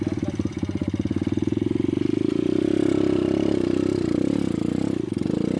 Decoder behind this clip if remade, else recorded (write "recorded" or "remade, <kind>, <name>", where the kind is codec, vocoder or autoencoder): recorded